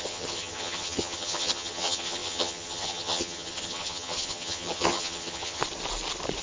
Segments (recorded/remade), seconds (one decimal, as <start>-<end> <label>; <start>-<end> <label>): 0.0-5.6 remade; 5.6-6.4 recorded